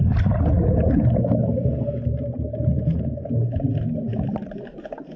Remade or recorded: recorded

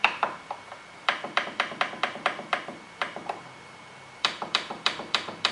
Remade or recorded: remade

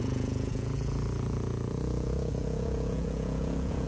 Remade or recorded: remade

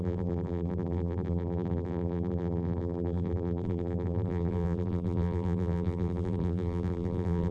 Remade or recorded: remade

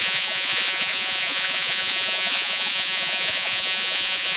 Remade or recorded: remade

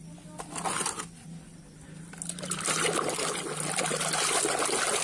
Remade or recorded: recorded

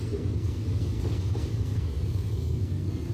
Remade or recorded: remade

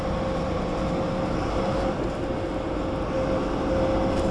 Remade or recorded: recorded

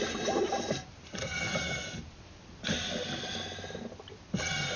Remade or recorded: recorded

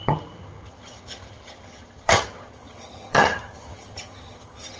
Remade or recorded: remade